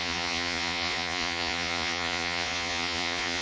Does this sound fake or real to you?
fake